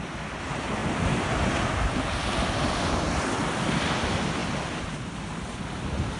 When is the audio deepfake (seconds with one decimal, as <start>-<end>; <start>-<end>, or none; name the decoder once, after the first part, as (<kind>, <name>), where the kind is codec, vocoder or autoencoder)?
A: none